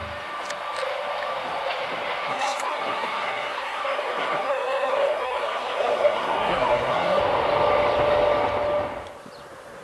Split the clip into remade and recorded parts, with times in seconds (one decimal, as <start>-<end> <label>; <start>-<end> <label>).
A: 0.0-2.3 recorded; 2.3-7.2 remade; 7.2-9.8 recorded